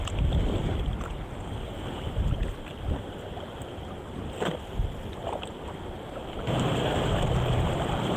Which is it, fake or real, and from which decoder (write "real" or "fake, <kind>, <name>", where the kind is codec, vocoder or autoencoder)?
real